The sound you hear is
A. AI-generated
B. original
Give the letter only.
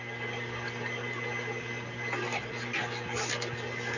B